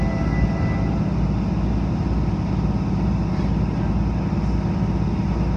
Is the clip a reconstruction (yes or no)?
no